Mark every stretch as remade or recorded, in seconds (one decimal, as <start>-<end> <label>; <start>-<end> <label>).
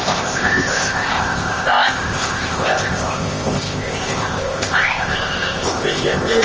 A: 0.0-6.4 remade